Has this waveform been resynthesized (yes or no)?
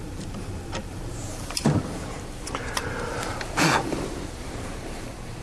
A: yes